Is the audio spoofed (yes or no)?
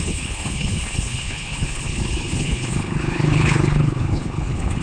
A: yes